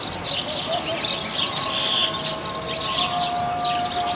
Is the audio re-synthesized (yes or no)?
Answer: no